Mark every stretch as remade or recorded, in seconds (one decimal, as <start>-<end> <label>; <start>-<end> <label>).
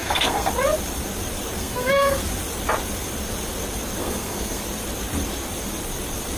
0.0-0.5 remade; 0.5-1.6 recorded; 1.6-2.2 remade; 2.2-4.0 recorded; 4.0-4.6 remade; 4.6-6.4 recorded